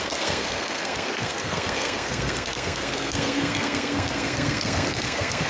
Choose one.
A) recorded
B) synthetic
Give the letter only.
B